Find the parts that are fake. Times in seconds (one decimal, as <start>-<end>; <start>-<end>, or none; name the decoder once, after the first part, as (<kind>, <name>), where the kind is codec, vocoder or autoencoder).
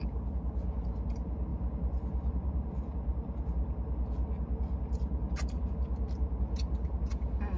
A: none